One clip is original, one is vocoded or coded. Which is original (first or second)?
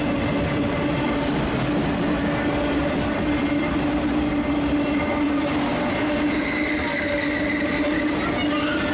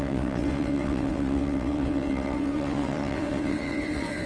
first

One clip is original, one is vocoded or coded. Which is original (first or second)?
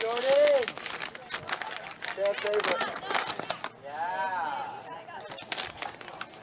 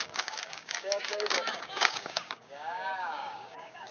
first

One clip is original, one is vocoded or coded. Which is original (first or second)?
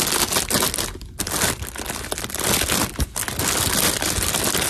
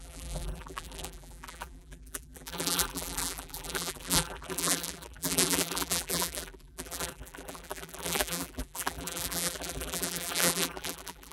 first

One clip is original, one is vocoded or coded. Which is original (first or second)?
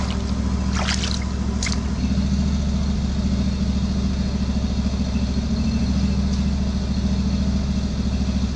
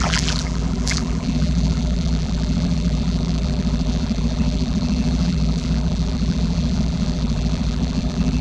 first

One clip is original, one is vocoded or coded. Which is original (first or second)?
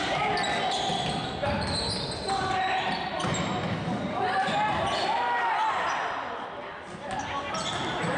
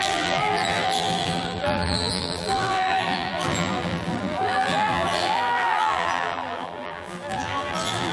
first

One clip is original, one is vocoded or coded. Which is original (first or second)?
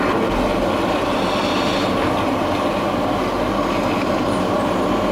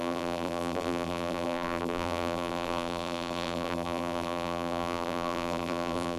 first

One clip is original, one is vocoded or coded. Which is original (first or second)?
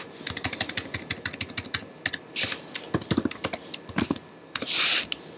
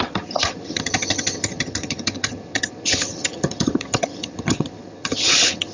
first